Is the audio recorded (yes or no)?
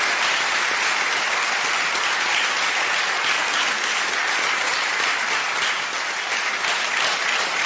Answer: yes